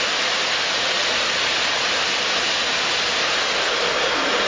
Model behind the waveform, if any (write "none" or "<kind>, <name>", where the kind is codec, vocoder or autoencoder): none